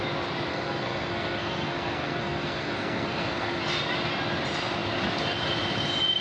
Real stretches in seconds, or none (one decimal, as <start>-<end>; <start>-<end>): 0.0-0.5; 3.6-6.2